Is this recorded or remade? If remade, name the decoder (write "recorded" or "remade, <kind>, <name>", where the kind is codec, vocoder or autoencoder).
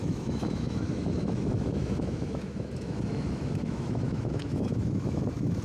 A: remade, autoencoder, DAC-VAE